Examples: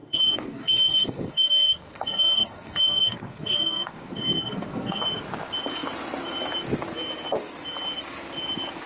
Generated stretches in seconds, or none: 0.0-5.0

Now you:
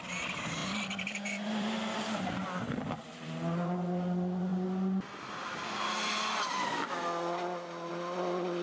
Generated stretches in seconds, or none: 0.6-3.4